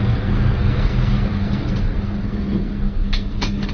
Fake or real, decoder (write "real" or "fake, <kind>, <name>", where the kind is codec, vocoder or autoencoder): fake, codec, SNAC